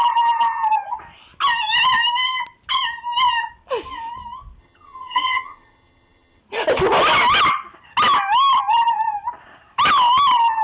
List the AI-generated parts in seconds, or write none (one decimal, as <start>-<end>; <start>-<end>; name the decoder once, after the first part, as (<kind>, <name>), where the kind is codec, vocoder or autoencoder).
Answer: 4.6-6.4 (vocoder, HiFi-GAN)